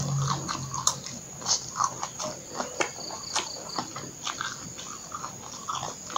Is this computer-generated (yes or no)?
no